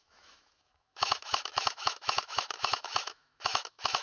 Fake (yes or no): yes